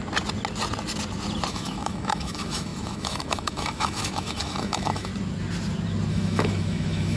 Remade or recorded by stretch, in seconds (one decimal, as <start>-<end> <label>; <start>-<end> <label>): 0.0-1.5 recorded; 1.5-5.1 remade; 5.1-6.1 recorded; 6.1-7.2 remade